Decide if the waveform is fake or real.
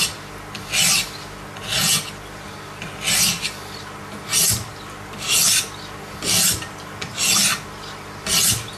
real